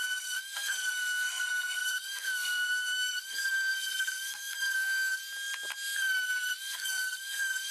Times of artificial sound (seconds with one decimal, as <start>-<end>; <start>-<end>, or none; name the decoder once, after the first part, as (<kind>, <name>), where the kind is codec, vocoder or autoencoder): 0.0-5.2 (codec, SNAC); 6.6-7.7